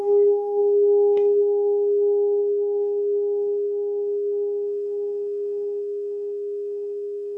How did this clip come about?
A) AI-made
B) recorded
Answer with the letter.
A